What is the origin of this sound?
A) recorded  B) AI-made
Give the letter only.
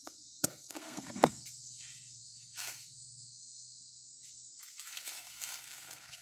B